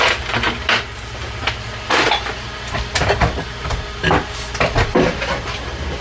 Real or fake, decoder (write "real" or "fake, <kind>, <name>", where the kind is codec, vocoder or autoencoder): real